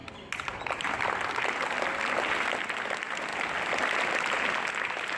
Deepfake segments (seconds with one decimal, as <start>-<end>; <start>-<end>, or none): none